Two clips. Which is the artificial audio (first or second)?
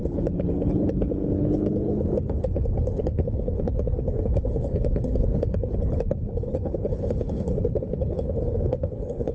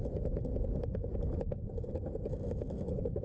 first